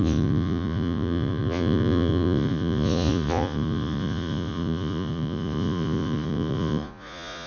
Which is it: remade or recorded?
remade